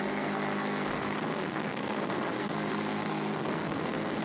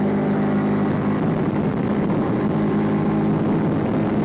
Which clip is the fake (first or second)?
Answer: first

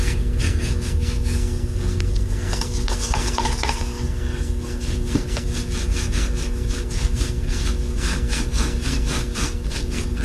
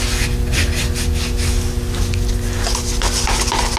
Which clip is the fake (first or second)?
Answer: first